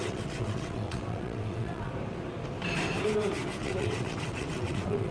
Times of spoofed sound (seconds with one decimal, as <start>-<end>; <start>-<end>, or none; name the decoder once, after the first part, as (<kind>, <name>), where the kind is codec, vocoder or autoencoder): 0.0-1.9 (vocoder, WaveNeXt); 3.6-5.1